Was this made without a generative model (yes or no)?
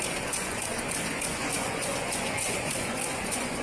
no